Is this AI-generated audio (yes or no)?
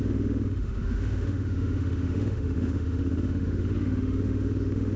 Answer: yes